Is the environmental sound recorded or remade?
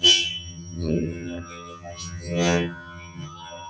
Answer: remade